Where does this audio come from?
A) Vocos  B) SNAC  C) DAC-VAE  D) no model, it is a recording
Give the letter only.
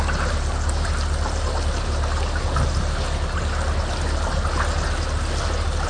D